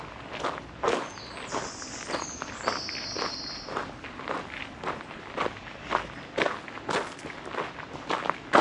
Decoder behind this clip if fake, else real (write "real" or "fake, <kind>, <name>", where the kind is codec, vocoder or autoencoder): real